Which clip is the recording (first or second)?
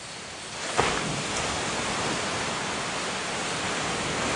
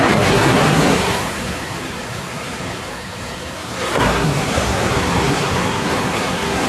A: first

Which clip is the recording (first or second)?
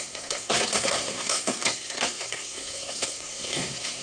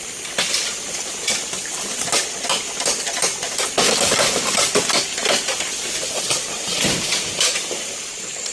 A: second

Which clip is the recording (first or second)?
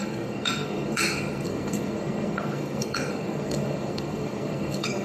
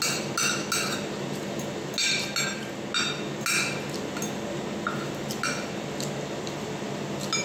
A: second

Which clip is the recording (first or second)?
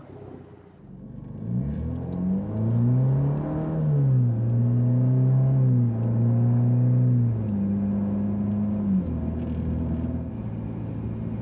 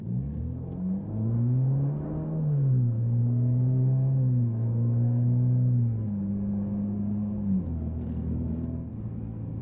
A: first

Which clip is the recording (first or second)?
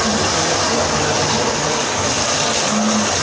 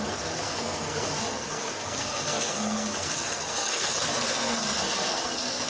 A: first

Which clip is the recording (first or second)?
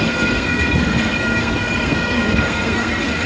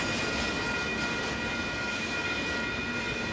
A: second